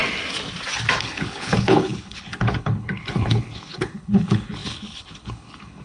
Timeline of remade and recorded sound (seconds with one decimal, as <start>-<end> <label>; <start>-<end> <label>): 0.0-1.0 recorded; 1.0-5.8 remade

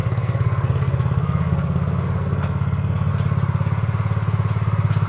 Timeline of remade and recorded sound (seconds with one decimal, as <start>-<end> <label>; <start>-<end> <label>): 0.0-3.1 remade; 3.1-5.1 recorded

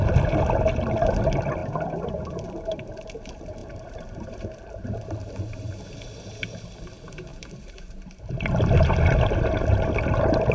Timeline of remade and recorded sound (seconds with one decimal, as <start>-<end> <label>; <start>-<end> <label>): 0.0-3.6 recorded; 3.6-5.8 remade; 5.8-7.3 recorded; 7.3-8.3 remade; 8.3-10.5 recorded

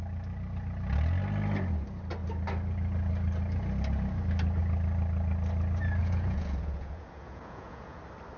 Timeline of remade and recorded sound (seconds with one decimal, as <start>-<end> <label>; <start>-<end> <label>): 0.0-6.0 recorded; 6.0-8.0 remade; 8.0-8.4 recorded

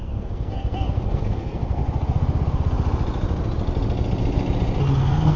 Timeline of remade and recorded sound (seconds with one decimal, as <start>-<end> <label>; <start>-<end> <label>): 0.0-1.8 remade; 1.8-5.0 recorded; 5.0-5.4 remade

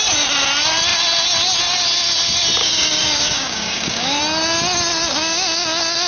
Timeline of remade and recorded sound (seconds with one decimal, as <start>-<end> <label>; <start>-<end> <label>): 0.0-2.6 recorded; 2.6-4.2 remade; 4.2-6.1 recorded

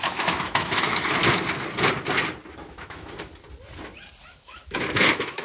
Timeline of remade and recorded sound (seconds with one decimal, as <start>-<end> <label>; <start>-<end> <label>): 0.0-1.2 remade; 1.2-2.7 recorded; 2.7-3.3 remade; 3.3-4.2 recorded; 4.2-5.4 remade